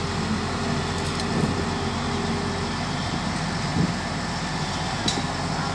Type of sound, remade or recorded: recorded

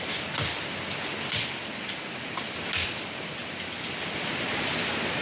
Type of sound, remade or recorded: recorded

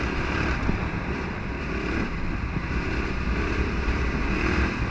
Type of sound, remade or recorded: recorded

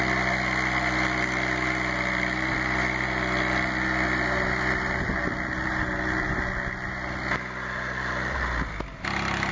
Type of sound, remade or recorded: recorded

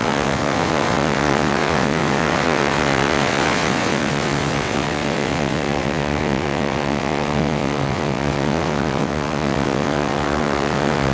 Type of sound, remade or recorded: remade